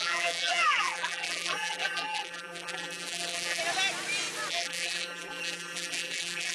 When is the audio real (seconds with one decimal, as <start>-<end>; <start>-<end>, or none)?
3.6-4.5